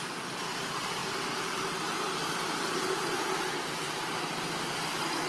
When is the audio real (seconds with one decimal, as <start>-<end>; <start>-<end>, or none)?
0.0-5.3